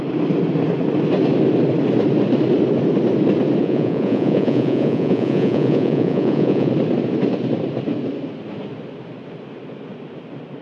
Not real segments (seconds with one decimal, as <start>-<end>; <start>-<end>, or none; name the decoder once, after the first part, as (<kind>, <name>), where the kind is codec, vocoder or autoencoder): 3.6-6.7 (vocoder, Vocos)